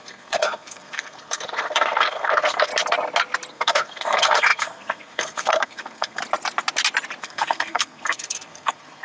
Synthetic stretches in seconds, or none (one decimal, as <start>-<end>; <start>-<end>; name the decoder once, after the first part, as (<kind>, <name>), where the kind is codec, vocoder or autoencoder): 0.0-2.7 (codec, SNAC); 3.5-6.2; 7.2-9.0